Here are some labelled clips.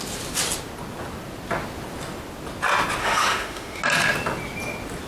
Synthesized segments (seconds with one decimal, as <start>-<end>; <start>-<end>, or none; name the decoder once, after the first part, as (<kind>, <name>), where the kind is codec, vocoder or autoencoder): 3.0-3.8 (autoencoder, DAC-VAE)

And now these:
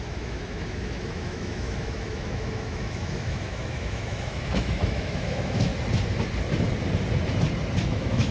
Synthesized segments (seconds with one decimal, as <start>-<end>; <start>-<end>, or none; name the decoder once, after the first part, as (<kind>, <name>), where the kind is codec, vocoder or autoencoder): 0.0-5.7 (autoencoder, DAC-VAE); 7.9-8.3

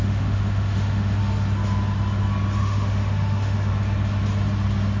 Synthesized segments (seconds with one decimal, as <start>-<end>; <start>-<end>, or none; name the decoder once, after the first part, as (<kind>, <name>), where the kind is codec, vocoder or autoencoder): 0.0-1.2 (autoencoder, DAC-VAE); 2.6-3.7